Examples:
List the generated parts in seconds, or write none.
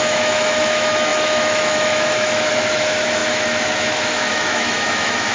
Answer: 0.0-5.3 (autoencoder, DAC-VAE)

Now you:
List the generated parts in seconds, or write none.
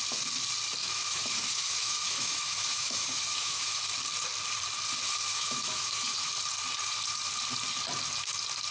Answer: 0.8-3.8 (autoencoder, DAC-VAE); 5.3-6.3